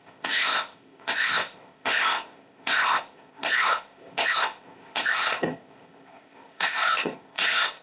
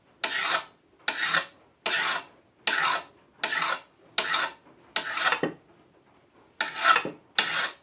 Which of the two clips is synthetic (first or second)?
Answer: first